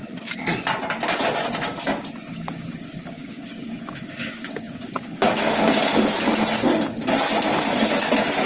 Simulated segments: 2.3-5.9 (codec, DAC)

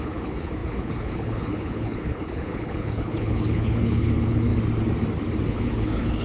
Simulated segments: 0.0-4.5 (codec, HILCodec); 5.5-6.2

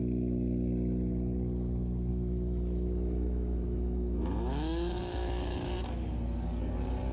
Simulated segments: 2.1-5.7 (autoencoder, DAC-VAE)

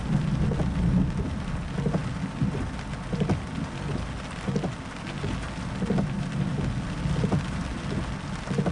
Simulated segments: none

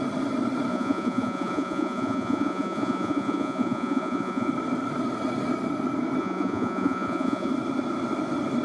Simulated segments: 0.7-4.5 (vocoder, Vocos); 6.2-7.5

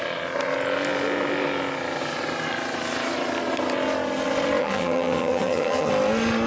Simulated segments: 4.6-5.9 (vocoder, HiFi-GAN)